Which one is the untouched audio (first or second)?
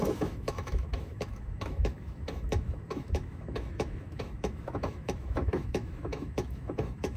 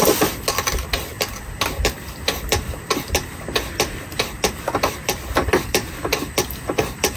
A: second